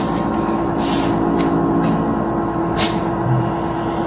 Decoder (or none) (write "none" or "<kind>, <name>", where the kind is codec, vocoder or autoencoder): none